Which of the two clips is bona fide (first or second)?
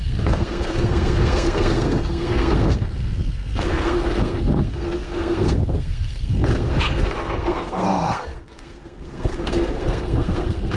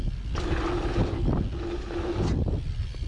second